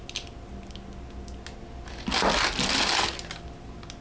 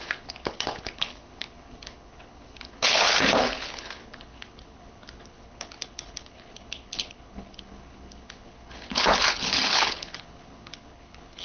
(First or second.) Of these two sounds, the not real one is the second